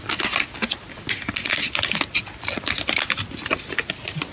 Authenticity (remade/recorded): recorded